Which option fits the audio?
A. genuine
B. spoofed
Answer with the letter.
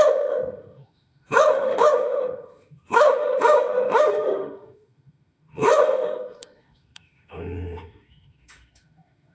B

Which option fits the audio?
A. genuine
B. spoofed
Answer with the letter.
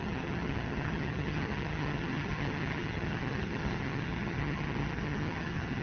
B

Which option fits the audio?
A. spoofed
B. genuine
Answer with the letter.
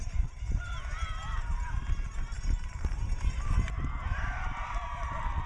A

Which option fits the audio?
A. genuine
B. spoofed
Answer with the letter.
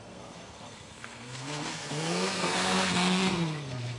B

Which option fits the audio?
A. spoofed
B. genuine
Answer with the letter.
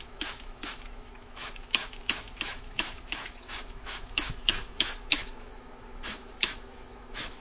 A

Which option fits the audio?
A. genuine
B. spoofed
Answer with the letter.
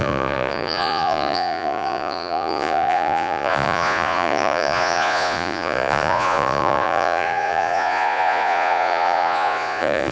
B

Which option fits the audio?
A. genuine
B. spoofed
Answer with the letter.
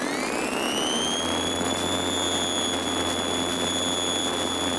A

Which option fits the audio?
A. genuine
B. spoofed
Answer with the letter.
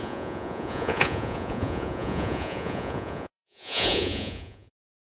B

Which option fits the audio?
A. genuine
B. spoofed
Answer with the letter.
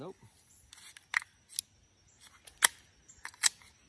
A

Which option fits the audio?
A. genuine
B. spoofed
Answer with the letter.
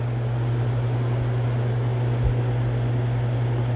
A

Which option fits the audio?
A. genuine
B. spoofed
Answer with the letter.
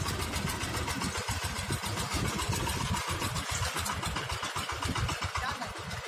A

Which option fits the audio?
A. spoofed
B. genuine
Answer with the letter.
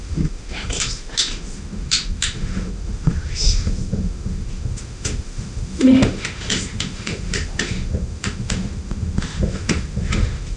A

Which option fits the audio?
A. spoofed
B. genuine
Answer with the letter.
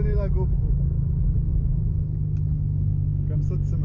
B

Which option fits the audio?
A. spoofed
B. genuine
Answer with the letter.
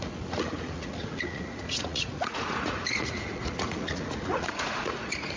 A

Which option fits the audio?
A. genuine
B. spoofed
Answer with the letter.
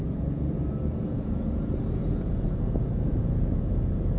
B